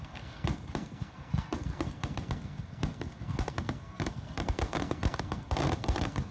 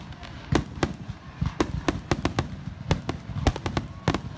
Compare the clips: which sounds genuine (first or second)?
second